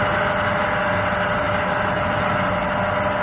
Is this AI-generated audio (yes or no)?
no